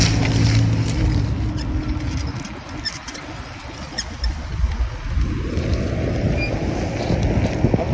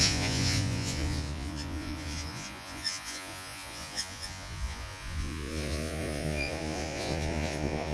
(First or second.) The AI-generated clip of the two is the second